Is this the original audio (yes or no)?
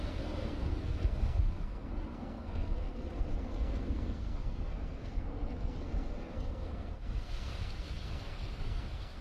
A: no